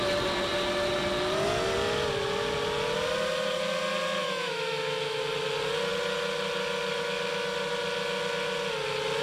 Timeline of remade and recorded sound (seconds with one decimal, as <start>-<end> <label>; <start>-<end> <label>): 0.0-4.2 recorded; 4.2-5.2 remade; 5.2-9.2 recorded